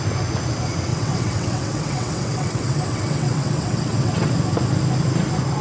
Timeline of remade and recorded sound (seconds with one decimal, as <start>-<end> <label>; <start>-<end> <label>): 0.0-0.9 recorded; 0.9-4.3 remade; 4.3-5.6 recorded